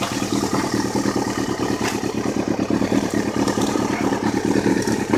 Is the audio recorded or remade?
remade